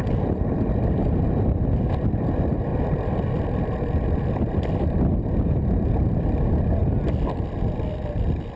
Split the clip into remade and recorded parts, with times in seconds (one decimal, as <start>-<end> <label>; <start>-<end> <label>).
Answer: 0.0-8.6 recorded